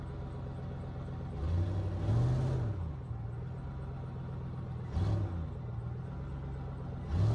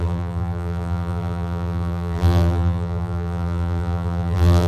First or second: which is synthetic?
second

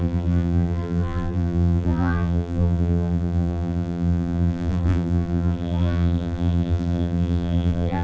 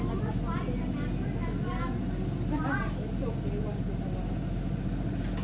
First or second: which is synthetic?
first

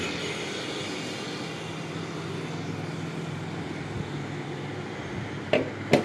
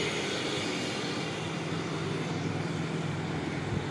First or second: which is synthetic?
second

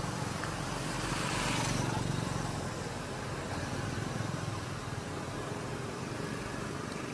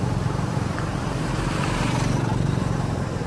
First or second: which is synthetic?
second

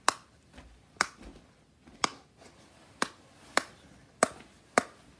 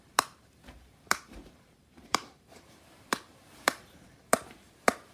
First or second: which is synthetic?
second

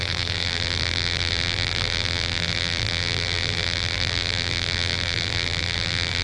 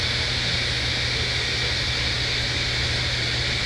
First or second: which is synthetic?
first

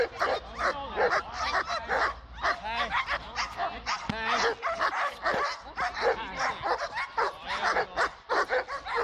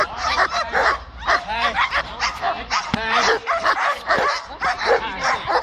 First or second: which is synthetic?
second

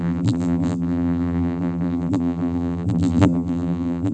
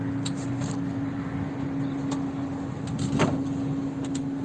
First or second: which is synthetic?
first